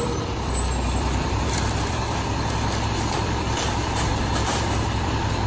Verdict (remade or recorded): remade